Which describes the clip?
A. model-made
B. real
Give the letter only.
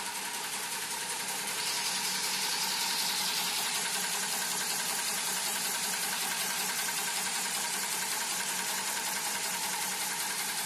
A